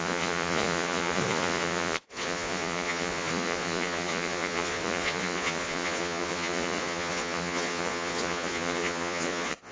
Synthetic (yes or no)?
yes